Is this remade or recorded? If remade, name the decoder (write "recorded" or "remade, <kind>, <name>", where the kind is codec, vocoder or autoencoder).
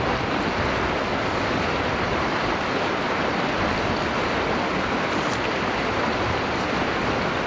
remade, vocoder, BigVGAN v2